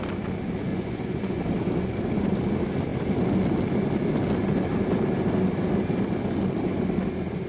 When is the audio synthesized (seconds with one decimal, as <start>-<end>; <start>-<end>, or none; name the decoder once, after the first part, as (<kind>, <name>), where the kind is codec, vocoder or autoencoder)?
0.7-1.4 (vocoder, Vocos)